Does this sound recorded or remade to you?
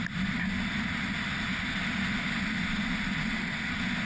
recorded